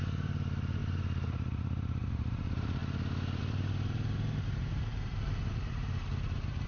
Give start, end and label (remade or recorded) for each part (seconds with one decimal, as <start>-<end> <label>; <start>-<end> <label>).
0.0-2.8 remade; 2.8-3.4 recorded; 3.4-6.7 remade